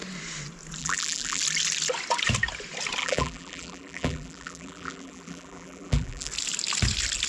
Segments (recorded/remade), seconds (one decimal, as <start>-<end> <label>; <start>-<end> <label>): 0.0-0.8 recorded; 0.8-1.4 remade; 1.4-3.0 recorded; 3.0-6.3 remade; 6.3-7.3 recorded

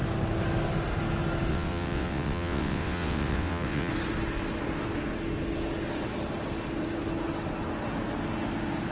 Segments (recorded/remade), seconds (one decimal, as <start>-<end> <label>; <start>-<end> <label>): 0.0-1.5 recorded; 1.5-3.9 remade; 3.9-8.9 recorded

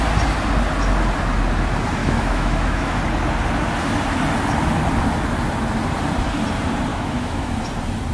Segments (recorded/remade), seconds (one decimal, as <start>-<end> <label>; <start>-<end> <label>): 0.0-2.0 recorded; 2.0-3.0 remade; 3.0-6.9 recorded; 6.9-7.5 remade; 7.5-8.1 recorded